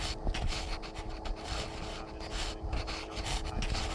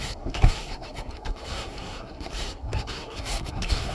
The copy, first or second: second